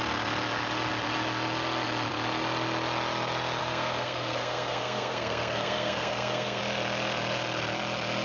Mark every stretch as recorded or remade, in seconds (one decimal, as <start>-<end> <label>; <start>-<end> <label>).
0.0-3.6 recorded; 3.6-6.6 remade; 6.6-8.2 recorded

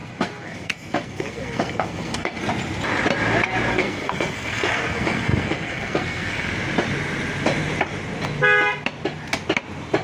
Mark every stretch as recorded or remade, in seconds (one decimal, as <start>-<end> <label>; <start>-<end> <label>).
0.0-2.4 remade; 2.4-3.7 recorded; 3.7-6.5 remade; 6.5-10.0 recorded